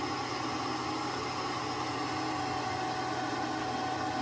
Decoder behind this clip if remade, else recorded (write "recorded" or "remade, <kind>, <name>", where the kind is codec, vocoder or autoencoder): recorded